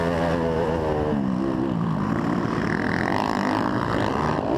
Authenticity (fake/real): real